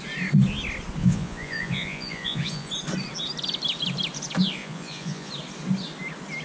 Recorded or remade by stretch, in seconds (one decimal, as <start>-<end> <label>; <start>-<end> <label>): 0.0-1.0 recorded; 1.0-2.7 remade; 2.7-4.6 recorded; 4.6-5.3 remade; 5.3-6.4 recorded